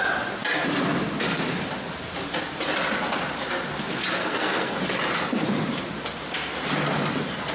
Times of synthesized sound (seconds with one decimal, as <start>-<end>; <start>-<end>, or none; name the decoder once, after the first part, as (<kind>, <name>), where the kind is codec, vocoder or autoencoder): 4.2-4.8 (codec, SNAC)